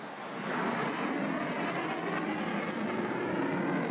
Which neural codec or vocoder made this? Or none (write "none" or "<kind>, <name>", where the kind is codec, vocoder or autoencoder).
none